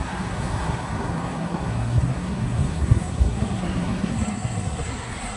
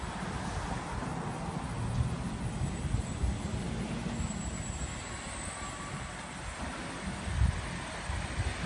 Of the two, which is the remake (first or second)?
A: first